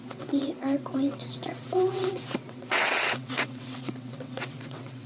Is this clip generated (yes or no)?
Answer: yes